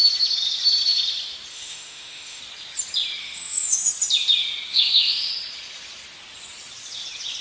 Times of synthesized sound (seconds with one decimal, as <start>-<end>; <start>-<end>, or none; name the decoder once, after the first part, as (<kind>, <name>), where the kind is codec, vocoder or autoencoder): 1.5-2.4 (autoencoder, DAC-VAE); 3.2-3.9; 4.7-5.3